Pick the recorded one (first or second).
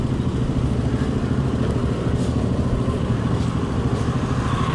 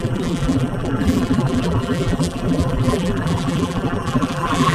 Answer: first